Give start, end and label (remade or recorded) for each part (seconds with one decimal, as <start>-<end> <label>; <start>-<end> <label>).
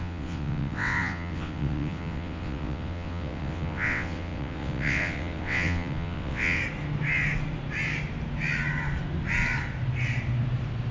0.0-6.6 remade; 6.6-10.9 recorded